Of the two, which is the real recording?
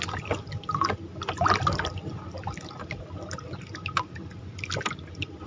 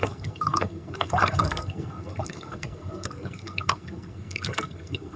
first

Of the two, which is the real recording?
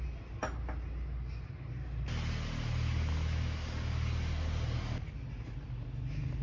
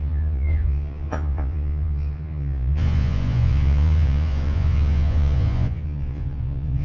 first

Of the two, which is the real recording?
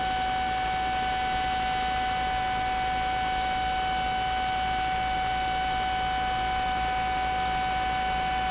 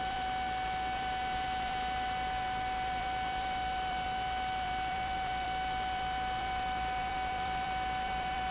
first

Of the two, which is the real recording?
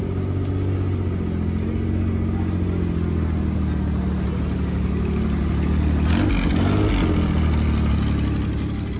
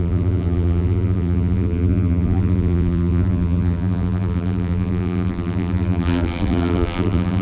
first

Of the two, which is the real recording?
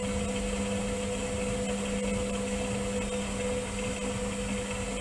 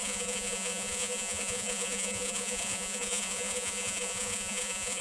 first